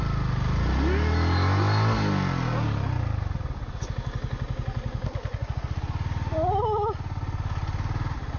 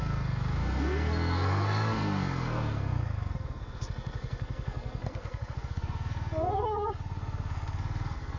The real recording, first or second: first